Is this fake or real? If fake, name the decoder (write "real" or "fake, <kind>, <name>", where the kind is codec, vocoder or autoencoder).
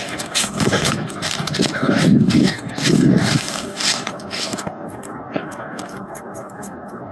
fake, codec, DAC